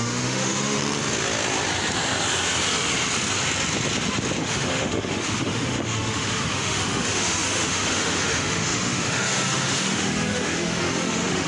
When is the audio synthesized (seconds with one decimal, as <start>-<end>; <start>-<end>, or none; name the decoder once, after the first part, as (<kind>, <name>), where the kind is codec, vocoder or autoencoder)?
0.0-0.8 (autoencoder, DAC-VAE); 4.4-11.5